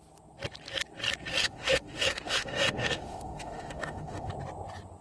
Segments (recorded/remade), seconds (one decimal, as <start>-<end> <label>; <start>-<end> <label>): 0.0-1.4 recorded; 1.4-4.3 remade; 4.3-5.0 recorded